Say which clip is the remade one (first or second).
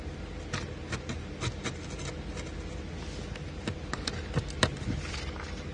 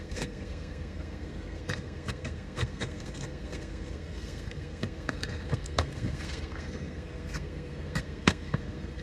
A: second